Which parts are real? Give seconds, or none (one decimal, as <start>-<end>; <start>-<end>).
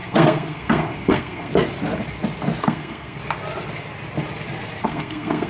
1.5-2.6; 3.2-4.8